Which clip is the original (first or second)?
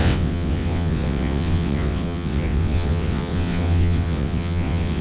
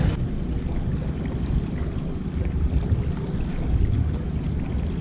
second